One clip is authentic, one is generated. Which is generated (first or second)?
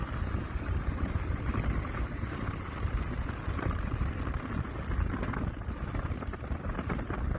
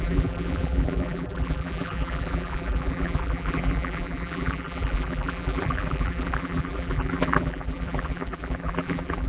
second